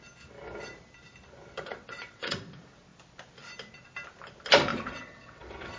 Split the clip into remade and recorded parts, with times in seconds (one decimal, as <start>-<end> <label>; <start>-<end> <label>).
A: 0.0-1.7 recorded; 1.7-2.4 remade; 2.4-4.7 recorded; 4.7-5.8 remade